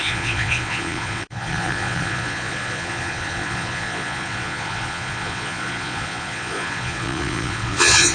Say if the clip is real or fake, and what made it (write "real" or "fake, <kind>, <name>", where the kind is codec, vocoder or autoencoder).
fake, vocoder, Vocos